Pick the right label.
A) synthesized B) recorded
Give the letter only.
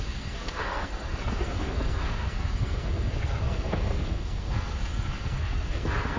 A